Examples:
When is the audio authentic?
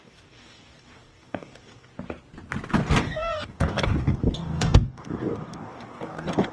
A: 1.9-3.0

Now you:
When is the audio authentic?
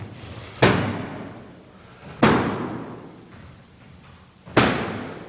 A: 0.0-5.3